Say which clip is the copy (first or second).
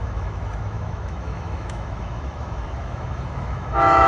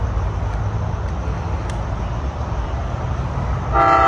first